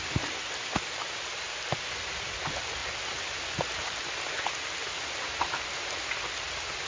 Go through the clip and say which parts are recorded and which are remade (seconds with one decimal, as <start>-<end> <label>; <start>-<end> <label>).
0.0-6.9 recorded